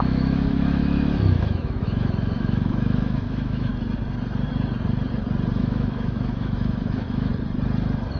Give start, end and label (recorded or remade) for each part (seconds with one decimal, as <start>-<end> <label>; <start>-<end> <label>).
0.0-3.7 remade; 3.7-5.6 recorded; 5.6-7.3 remade; 7.3-8.2 recorded